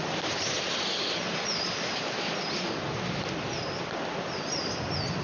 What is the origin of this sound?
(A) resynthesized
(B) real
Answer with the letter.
A